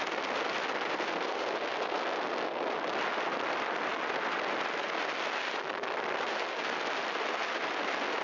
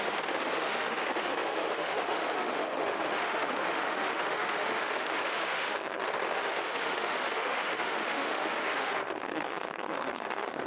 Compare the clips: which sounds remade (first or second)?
second